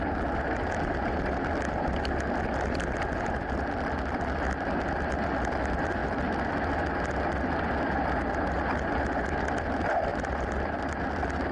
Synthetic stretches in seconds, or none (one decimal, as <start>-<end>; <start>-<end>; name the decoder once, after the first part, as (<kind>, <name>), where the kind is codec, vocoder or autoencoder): 10.1-10.8 (vocoder, BigVGAN v2)